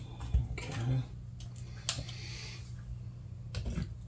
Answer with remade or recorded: recorded